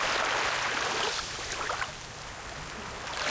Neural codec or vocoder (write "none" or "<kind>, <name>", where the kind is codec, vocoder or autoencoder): none